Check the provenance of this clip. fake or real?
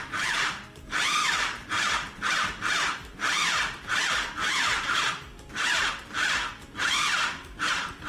fake